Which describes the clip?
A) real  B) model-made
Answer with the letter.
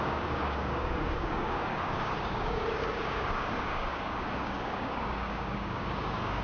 B